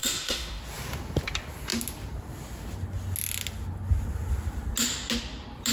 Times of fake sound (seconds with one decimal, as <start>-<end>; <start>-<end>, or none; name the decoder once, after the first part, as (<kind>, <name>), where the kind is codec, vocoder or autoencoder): 0.0-0.6 (autoencoder, DAC-VAE)